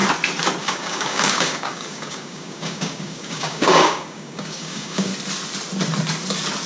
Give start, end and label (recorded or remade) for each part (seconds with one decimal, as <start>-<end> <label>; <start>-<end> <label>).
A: 0.0-0.6 recorded; 0.6-5.1 remade; 5.1-6.7 recorded